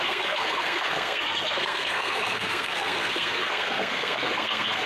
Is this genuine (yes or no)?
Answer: no